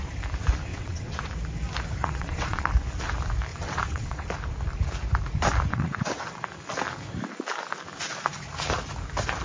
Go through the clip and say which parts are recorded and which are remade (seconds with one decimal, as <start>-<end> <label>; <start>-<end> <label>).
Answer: 0.0-0.7 recorded; 0.7-1.3 remade; 1.3-2.0 recorded; 2.0-2.7 remade; 2.7-3.5 recorded; 3.5-4.3 remade; 4.3-5.7 recorded; 5.7-6.4 remade; 6.4-9.4 recorded

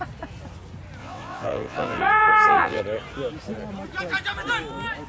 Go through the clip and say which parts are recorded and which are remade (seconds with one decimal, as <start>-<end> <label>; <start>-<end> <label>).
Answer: 0.0-1.0 recorded; 1.0-2.8 remade; 2.8-5.1 recorded

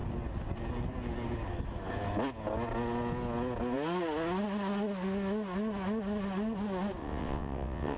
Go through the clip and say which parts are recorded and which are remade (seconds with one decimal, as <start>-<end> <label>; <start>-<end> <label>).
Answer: 0.0-7.0 recorded; 7.0-8.0 remade

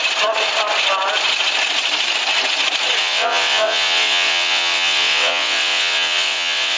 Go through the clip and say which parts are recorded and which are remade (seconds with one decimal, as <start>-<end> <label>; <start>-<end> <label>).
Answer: 0.0-3.0 recorded; 3.0-6.8 remade

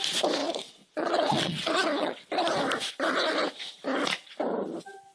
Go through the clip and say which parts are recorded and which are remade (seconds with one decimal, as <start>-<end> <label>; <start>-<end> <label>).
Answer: 0.0-0.4 recorded; 0.4-2.3 remade; 2.3-5.1 recorded

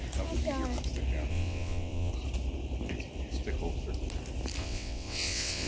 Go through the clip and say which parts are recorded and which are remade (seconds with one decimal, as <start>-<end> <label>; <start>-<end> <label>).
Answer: 0.0-1.3 recorded; 1.3-2.1 remade; 2.1-4.6 recorded; 4.6-5.7 remade